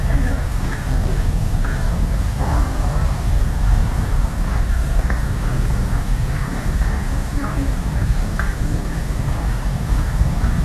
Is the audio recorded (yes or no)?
no